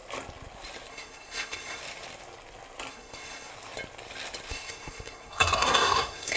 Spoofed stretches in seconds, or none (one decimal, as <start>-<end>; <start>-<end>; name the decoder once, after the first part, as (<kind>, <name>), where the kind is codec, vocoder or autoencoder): 0.9-1.8 (codec, SNAC); 2.9-3.5; 4.5-6.4